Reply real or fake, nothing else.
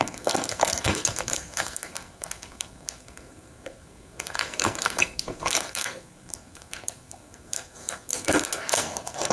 fake